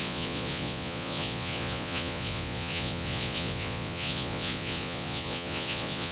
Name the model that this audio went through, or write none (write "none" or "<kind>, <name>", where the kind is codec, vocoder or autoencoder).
vocoder, Vocos